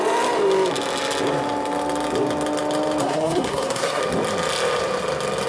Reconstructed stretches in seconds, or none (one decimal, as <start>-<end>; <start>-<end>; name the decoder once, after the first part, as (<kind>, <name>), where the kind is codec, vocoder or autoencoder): 3.0-4.0 (codec, SNAC)